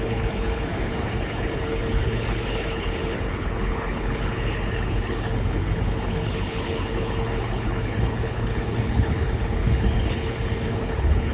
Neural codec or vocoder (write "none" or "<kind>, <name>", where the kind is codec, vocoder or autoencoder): codec, HILCodec